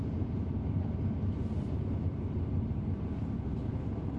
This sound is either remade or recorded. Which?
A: remade